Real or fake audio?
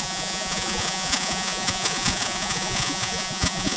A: fake